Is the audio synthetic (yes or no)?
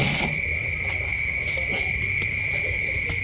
no